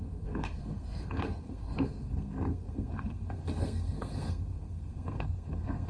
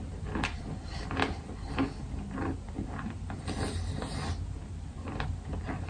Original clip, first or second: second